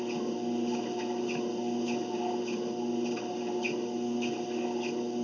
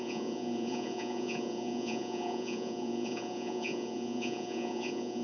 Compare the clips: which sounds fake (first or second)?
second